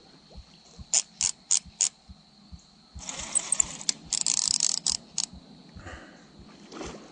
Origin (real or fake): real